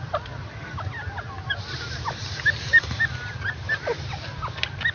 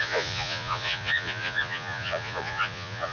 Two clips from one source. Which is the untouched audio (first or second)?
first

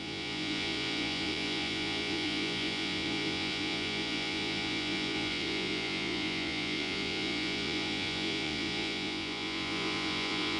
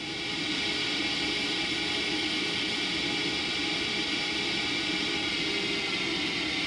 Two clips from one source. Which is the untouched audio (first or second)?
second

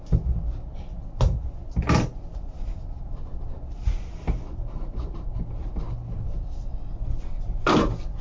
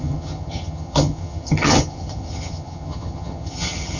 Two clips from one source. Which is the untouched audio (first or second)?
first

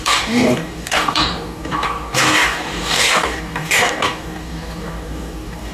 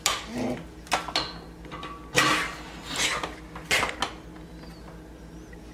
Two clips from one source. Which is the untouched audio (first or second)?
second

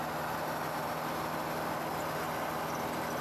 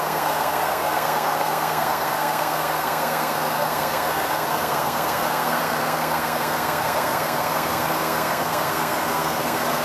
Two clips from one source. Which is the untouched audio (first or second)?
first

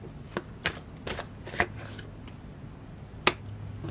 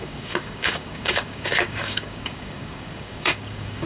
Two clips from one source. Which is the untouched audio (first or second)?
first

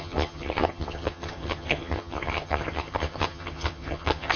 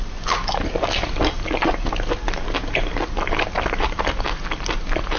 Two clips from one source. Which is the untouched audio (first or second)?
second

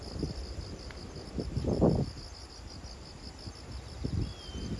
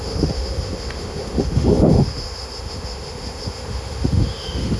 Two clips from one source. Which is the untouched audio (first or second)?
first